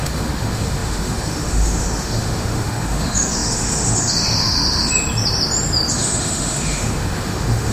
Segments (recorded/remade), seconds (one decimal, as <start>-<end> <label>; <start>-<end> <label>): 0.0-4.9 remade; 4.9-5.9 recorded; 5.9-7.7 remade